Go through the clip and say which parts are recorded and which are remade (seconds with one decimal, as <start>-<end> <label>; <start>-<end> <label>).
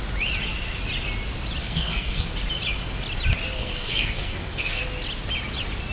0.0-1.6 recorded; 1.6-2.3 remade; 2.3-3.6 recorded; 3.6-4.8 remade; 4.8-5.9 recorded